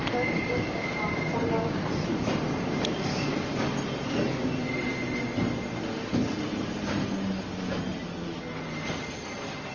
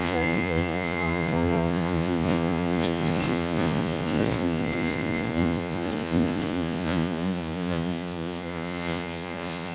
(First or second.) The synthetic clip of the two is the second